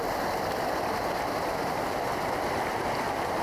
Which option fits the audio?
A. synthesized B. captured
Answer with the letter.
B